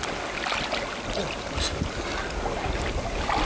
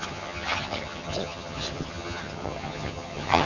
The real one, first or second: first